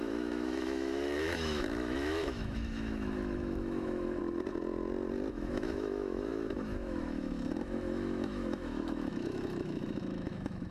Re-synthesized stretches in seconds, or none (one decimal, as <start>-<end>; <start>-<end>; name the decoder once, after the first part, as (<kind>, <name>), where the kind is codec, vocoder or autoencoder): 0.0-4.2 (autoencoder, DAC-VAE); 5.3-10.7

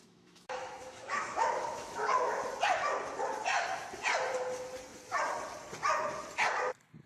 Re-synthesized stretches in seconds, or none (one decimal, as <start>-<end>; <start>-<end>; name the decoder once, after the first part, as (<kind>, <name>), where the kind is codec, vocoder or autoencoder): 0.0-2.4 (autoencoder, DAC-VAE)